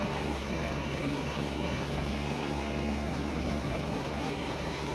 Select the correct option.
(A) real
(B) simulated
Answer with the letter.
B